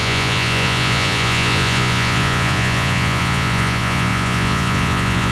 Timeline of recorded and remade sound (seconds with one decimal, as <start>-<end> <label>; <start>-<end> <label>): 0.0-5.3 remade